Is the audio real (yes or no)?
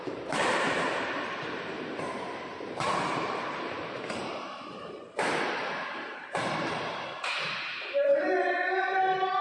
no